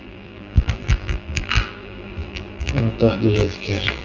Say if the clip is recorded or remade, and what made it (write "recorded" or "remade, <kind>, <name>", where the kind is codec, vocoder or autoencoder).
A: remade, vocoder, BigVGAN v2